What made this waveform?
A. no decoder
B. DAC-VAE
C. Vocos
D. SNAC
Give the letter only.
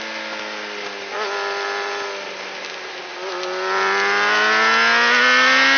A